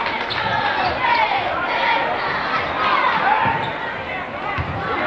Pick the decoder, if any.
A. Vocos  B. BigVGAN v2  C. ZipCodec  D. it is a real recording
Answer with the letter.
D